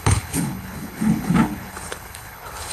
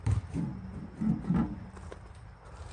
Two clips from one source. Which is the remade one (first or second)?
first